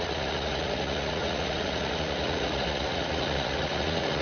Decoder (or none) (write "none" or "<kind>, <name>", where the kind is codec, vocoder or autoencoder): vocoder, Vocos